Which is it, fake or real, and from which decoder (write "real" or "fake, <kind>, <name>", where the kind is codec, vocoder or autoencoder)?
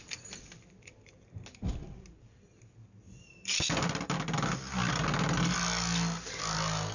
real